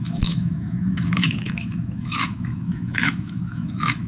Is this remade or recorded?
remade